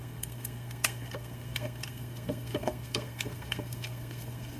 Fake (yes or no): yes